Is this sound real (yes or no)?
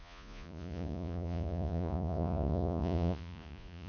no